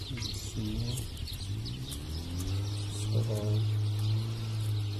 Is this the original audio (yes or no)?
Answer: yes